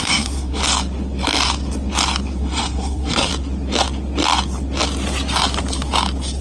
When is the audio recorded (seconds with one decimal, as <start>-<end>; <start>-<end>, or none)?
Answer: 0.6-2.4; 3.3-6.4